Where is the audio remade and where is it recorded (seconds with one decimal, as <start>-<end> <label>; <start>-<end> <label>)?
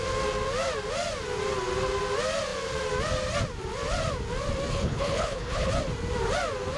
0.0-4.7 recorded; 4.7-5.7 remade; 5.7-6.8 recorded